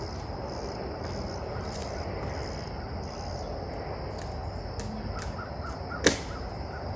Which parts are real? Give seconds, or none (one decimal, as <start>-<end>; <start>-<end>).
0.0-7.0